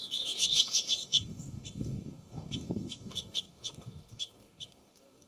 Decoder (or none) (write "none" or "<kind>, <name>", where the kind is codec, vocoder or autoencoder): codec, DAC